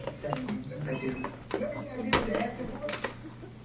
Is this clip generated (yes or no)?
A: no